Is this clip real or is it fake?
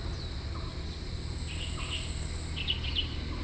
real